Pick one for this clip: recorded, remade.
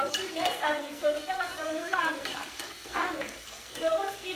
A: remade